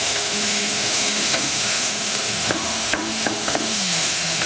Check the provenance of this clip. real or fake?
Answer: fake